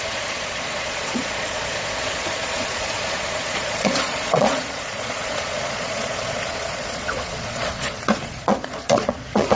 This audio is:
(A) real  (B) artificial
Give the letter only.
B